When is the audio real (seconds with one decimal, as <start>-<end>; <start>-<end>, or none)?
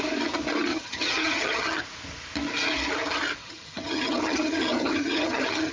0.0-0.7; 1.8-3.4